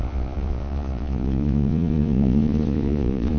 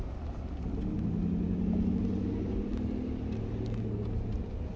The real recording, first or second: second